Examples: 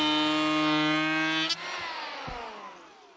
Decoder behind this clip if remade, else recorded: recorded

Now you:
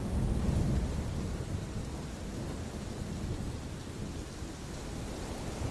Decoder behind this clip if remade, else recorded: recorded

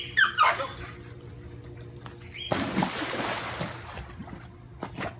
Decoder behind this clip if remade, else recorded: recorded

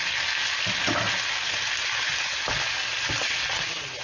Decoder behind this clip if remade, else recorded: recorded